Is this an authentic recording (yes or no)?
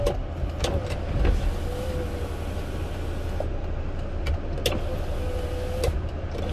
yes